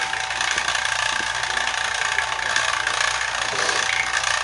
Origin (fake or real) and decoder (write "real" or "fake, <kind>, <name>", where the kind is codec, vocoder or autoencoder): fake, vocoder, BigVGAN v2